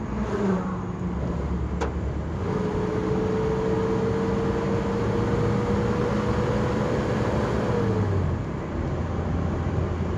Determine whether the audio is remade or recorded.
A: recorded